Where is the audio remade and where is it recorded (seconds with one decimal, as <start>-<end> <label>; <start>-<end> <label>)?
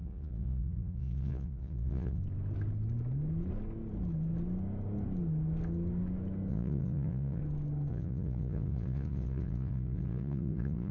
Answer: 0.0-2.2 remade; 2.2-6.5 recorded; 6.5-7.4 remade; 7.4-7.9 recorded; 7.9-10.9 remade